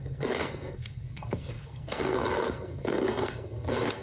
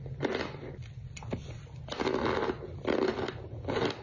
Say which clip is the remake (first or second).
first